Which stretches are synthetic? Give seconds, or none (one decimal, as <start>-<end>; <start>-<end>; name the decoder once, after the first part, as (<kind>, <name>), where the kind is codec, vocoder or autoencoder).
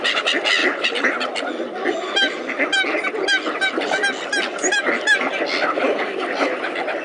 none